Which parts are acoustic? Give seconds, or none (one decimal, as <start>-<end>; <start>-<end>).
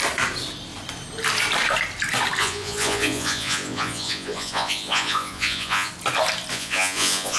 0.0-2.4; 5.9-6.5